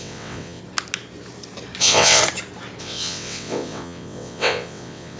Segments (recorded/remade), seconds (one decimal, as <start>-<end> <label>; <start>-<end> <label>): 0.0-0.6 remade; 0.6-1.8 recorded; 1.8-2.2 remade; 2.2-2.8 recorded; 2.8-5.2 remade